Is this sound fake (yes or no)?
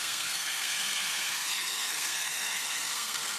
yes